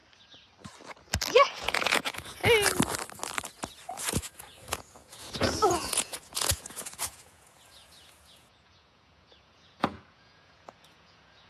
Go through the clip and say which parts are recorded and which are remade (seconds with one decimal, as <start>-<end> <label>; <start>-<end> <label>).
0.0-1.3 recorded; 1.3-2.4 remade; 2.4-3.9 recorded; 3.9-11.5 remade